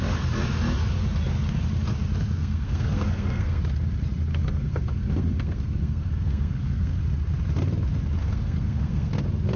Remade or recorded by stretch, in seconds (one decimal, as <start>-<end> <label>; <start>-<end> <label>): 0.0-2.4 recorded; 2.4-3.6 remade; 3.6-4.3 recorded; 4.3-7.0 remade; 7.0-8.2 recorded; 8.2-9.1 remade; 9.1-9.6 recorded